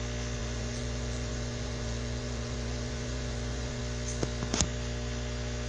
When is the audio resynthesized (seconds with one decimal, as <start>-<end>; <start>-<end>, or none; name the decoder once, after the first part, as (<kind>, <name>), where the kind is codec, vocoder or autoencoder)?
0.4-3.8 (vocoder, Vocos)